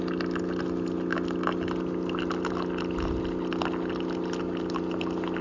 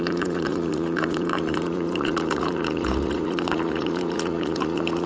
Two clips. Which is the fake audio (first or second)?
second